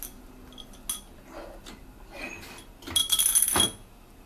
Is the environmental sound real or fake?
real